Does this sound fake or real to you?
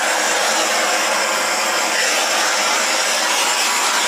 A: fake